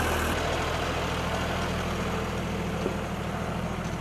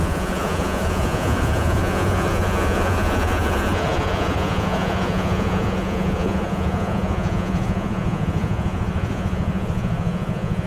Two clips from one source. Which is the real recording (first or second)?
first